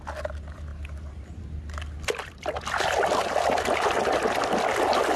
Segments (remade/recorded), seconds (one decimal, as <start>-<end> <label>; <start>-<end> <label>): 0.0-5.2 recorded